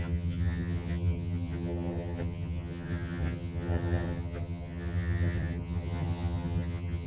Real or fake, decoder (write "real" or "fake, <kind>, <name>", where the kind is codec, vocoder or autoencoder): fake, vocoder, HiFi-GAN